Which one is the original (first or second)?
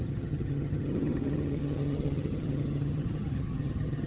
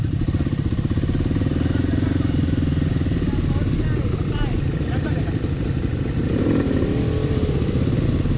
second